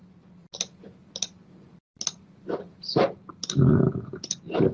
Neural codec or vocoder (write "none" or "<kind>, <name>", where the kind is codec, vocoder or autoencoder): none